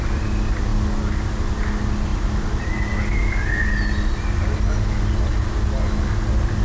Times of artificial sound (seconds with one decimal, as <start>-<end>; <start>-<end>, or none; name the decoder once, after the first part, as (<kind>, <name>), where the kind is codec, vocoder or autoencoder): none